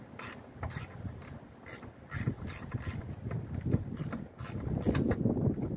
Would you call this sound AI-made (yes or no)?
no